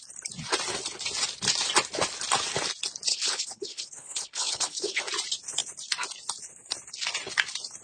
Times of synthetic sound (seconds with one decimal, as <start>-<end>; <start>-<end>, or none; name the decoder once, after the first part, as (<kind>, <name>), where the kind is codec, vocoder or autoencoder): 3.1-5.0 (codec, HILCodec)